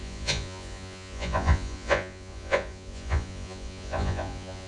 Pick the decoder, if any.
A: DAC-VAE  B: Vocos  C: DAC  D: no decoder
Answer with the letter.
B